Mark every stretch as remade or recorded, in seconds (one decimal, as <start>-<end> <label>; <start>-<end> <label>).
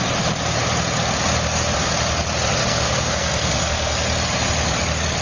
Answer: 0.0-2.6 recorded; 2.6-4.0 remade; 4.0-5.2 recorded